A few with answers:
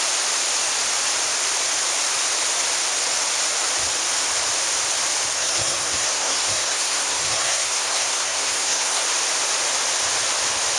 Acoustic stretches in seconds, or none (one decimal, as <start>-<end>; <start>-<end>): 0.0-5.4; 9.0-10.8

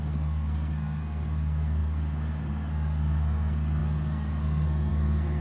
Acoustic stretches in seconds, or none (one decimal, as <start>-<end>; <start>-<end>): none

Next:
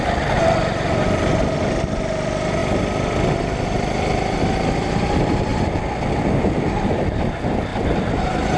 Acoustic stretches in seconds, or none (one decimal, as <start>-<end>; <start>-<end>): 0.0-8.6